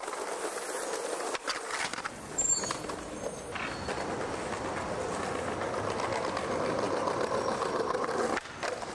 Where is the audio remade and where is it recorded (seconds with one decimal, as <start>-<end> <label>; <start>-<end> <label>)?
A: 0.0-1.9 recorded; 1.9-2.8 remade; 2.8-8.9 recorded